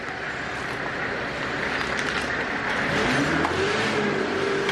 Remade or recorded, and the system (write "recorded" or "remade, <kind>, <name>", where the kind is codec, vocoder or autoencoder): recorded